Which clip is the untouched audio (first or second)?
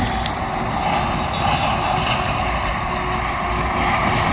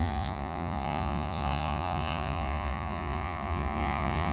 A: first